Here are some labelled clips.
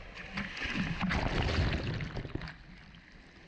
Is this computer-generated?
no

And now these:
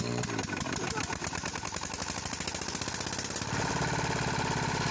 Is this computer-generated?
no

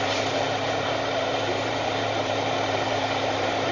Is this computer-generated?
yes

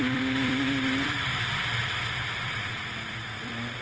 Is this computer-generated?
yes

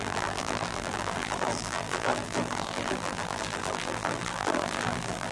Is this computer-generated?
yes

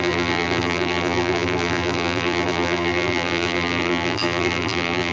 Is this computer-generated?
yes